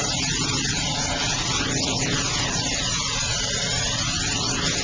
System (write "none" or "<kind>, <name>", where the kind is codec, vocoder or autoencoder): none